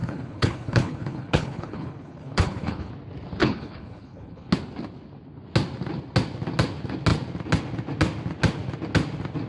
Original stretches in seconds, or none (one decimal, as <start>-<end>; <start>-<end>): 2.9-3.4; 4.5-9.5